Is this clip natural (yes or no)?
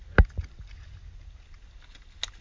yes